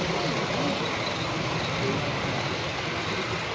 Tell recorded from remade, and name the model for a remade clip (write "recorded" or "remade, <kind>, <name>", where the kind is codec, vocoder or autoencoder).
recorded